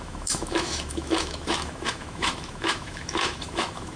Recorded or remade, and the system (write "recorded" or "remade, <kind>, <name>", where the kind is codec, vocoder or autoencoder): remade, autoencoder, DAC-VAE